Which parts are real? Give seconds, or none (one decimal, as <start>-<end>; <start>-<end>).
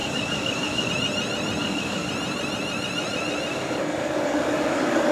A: 0.9-1.6; 2.1-3.5